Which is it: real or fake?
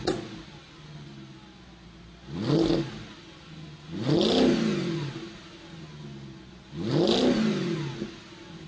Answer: real